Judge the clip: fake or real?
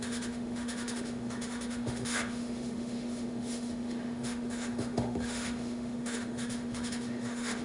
fake